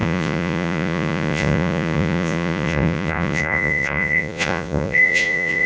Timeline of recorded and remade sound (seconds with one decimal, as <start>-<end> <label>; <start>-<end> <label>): 0.0-5.7 remade